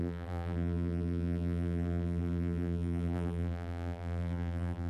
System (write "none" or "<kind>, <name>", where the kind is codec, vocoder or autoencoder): vocoder, BigVGAN v2